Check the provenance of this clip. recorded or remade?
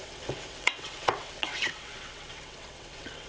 remade